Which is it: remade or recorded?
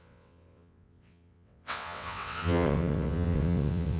remade